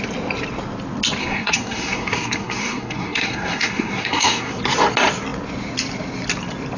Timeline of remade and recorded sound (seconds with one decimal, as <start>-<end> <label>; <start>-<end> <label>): 0.0-1.2 recorded; 1.2-4.6 remade; 4.6-6.8 recorded